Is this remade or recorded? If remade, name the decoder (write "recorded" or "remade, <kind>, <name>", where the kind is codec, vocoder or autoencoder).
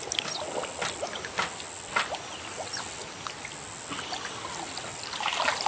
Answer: recorded